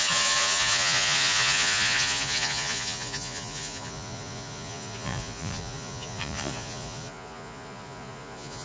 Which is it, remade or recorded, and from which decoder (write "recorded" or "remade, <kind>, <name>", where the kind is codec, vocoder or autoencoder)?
remade, vocoder, Vocos